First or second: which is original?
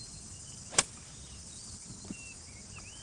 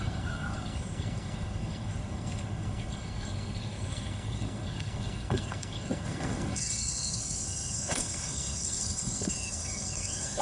first